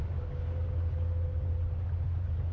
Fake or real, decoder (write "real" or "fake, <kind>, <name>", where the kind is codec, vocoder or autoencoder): real